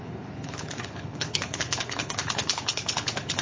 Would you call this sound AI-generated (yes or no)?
yes